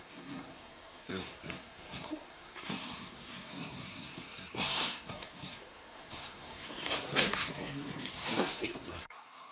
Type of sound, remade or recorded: remade